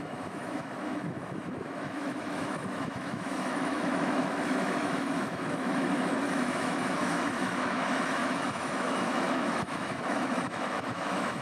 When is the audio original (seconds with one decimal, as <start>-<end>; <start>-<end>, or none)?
none